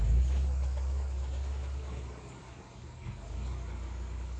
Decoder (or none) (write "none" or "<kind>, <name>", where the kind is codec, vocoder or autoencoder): codec, DAC